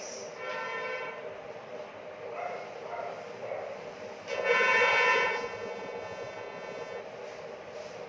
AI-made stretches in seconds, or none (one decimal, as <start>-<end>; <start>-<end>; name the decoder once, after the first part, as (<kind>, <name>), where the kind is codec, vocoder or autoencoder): 4.3-7.0 (vocoder, Vocos)